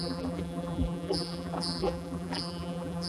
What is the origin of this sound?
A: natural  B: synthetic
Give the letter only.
B